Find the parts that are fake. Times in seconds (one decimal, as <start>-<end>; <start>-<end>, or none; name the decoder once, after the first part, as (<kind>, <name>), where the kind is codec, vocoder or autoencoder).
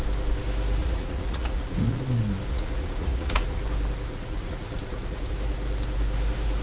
0.8-2.0 (vocoder, Vocos); 2.5-3.6; 4.1-5.3